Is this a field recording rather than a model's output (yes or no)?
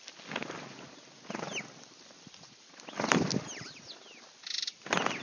yes